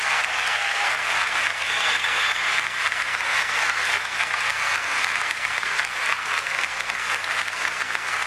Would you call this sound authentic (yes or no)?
no